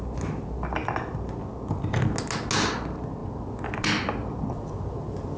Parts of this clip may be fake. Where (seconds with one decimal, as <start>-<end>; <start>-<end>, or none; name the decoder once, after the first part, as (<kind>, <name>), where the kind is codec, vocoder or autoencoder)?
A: none